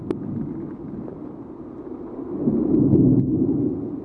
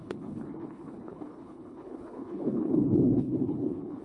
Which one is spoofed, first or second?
second